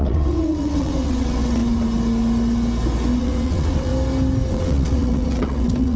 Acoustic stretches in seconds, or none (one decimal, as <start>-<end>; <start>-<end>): 1.6-3.2; 3.9-4.5